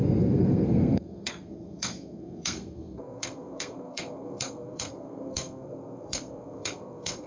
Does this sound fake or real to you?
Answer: fake